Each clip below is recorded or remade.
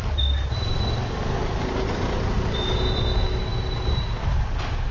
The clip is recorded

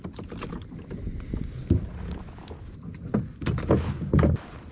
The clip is recorded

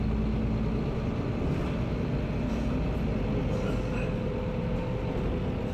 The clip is recorded